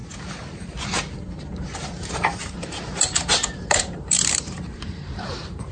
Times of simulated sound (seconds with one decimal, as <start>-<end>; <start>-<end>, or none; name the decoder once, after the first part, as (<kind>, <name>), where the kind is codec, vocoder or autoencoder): 1.9-5.7 (vocoder, BigVGAN v2)